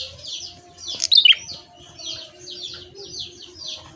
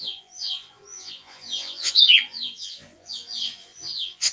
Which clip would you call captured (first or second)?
first